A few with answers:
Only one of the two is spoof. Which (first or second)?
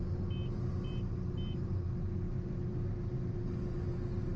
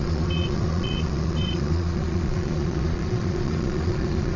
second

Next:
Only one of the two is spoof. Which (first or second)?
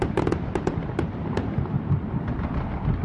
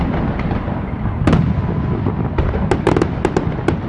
first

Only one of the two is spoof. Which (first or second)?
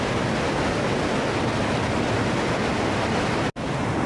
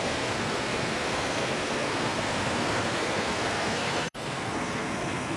second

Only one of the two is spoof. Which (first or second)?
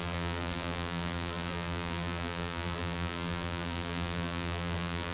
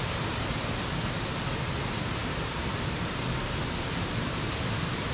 first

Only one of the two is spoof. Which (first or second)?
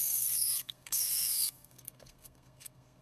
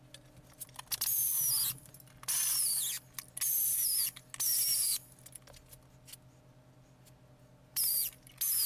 first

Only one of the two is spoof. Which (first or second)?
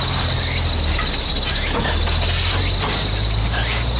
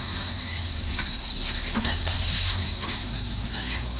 second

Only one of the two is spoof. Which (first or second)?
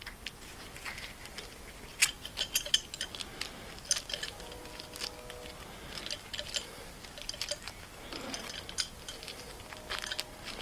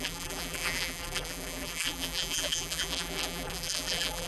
second